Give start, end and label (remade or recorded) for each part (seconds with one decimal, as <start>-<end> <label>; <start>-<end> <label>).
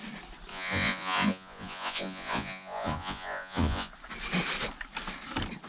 0.0-0.5 recorded; 0.5-3.9 remade; 3.9-5.7 recorded